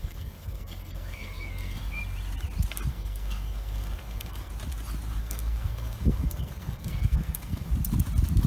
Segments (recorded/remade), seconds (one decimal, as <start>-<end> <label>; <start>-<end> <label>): 0.0-2.0 remade; 2.0-2.9 recorded; 2.9-4.5 remade; 4.5-5.2 recorded; 5.2-7.7 remade; 7.7-8.5 recorded